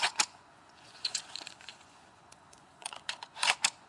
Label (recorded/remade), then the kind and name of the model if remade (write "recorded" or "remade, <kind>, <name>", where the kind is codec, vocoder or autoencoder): remade, vocoder, Vocos